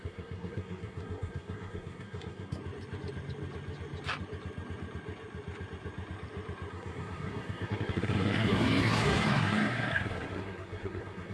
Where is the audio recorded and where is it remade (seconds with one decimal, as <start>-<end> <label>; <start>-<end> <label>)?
0.0-2.6 remade; 2.6-6.7 recorded; 6.7-11.3 remade